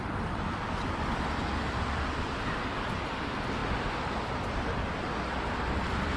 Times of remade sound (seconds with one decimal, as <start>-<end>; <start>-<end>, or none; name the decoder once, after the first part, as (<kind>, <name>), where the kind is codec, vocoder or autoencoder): 1.4-2.2 (vocoder, BigVGAN v2); 3.6-4.8